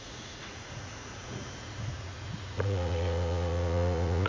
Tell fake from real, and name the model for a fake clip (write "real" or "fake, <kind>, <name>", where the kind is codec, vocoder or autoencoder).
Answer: fake, vocoder, Vocos